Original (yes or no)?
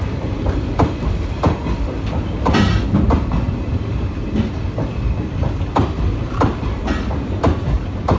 yes